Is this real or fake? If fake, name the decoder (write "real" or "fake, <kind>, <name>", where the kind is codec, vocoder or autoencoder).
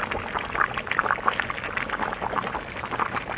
real